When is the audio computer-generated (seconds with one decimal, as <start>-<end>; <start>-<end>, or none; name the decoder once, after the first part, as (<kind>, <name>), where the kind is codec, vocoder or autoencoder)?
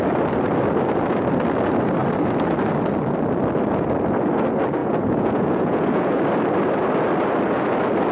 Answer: 4.8-6.2 (vocoder, Vocos)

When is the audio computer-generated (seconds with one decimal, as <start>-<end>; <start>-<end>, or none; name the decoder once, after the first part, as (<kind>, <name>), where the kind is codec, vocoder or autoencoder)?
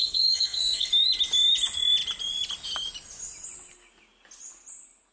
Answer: 0.0-0.9 (codec, SNAC)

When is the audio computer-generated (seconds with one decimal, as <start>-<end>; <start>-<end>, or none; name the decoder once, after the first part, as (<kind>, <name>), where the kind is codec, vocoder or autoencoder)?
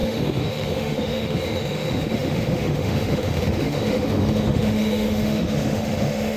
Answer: 0.0-6.4 (autoencoder, DAC-VAE)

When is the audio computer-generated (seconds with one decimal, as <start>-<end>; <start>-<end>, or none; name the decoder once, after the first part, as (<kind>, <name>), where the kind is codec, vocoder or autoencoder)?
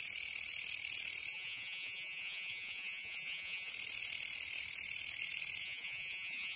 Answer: 1.3-3.7 (vocoder, Vocos); 5.6-6.6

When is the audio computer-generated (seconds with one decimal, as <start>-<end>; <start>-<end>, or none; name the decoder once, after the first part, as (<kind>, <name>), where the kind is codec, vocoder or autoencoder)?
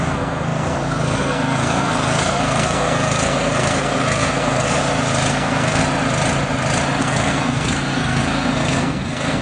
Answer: 0.0-4.8 (codec, SNAC); 5.3-5.8; 7.0-9.4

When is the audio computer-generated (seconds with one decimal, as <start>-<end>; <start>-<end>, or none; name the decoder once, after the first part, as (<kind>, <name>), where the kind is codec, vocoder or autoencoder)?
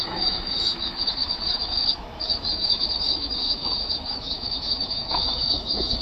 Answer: 0.0-6.0 (autoencoder, DAC-VAE)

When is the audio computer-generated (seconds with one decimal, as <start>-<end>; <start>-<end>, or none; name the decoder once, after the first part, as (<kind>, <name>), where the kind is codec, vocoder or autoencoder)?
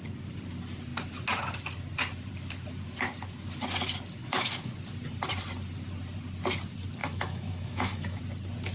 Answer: 4.2-4.7 (autoencoder, DAC-VAE); 7.0-8.2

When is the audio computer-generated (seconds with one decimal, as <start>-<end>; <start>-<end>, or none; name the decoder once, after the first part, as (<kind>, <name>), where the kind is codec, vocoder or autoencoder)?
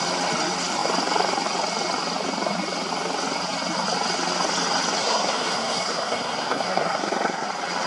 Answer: 5.0-7.5 (codec, SNAC)